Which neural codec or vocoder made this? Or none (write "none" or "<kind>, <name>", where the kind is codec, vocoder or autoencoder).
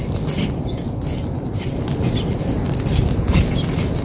none